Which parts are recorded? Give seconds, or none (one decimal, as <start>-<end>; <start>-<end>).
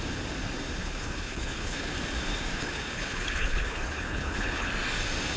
0.0-0.8; 1.9-2.6; 4.7-5.4